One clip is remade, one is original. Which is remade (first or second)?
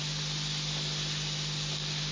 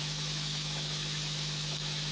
second